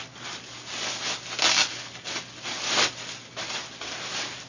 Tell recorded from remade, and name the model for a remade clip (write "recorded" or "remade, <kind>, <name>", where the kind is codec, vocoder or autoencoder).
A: recorded